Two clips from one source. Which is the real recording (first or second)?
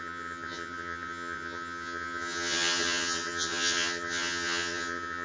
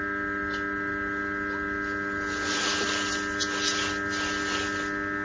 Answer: second